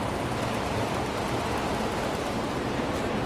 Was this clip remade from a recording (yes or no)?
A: yes